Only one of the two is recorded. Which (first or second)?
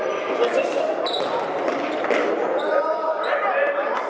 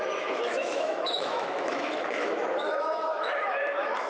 first